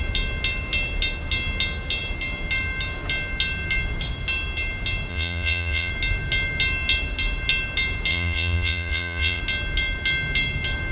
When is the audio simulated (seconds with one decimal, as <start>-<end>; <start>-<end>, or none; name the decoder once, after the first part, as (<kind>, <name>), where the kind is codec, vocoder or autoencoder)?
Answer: 5.1-5.9 (vocoder, Vocos); 8.1-9.4